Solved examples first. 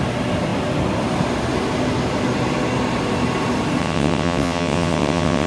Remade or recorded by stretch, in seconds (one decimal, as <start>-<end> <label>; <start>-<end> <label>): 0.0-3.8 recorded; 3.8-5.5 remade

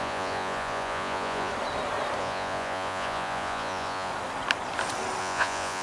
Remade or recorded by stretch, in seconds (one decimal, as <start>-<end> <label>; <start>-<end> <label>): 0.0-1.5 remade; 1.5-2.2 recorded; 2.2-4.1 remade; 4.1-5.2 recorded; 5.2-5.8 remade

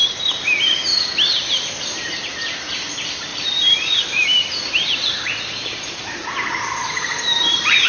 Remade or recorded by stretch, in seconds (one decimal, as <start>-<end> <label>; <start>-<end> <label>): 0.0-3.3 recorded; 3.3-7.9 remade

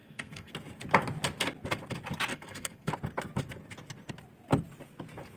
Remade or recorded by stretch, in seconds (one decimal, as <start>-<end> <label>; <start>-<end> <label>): 0.0-0.5 remade; 0.5-2.3 recorded; 2.3-2.9 remade; 2.9-5.4 recorded

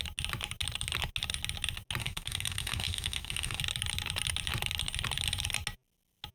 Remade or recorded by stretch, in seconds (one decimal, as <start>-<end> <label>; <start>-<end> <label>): 0.0-2.0 recorded; 2.0-3.6 remade; 3.6-6.3 recorded